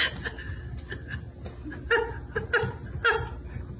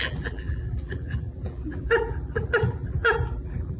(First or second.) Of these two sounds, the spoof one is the second